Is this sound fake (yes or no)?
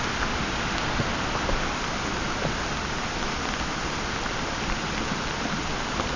no